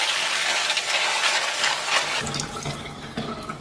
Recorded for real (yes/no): no